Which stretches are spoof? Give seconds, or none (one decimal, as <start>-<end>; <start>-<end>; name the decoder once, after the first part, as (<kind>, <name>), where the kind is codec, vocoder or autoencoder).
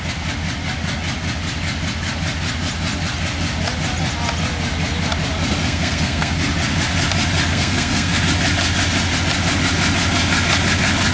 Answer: 5.6-6.3 (codec, SNAC); 7.5-8.2